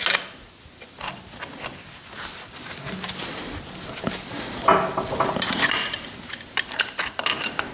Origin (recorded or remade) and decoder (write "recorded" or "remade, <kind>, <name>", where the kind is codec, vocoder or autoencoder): recorded